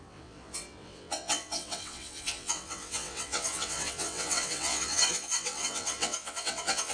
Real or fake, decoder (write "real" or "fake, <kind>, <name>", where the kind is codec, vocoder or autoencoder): fake, vocoder, WaveNeXt